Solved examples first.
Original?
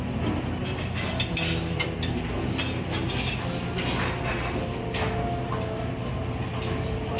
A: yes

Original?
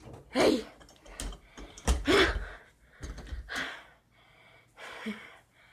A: yes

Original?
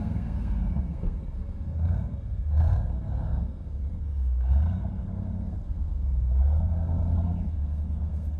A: no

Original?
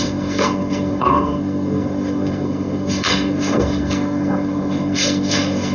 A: no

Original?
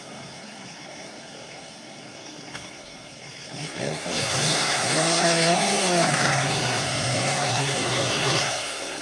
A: no